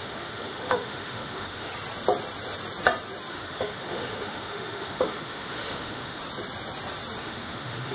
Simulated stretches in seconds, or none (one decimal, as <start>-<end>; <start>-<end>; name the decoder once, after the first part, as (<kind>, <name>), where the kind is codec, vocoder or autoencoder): 0.0-1.7 (autoencoder, DAC-VAE); 3.3-6.2; 7.2-7.9